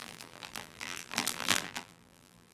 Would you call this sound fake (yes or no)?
yes